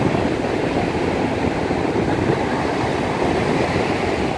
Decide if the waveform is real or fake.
real